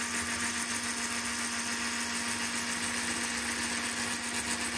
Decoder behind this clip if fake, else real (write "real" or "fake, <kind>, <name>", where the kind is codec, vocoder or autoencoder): real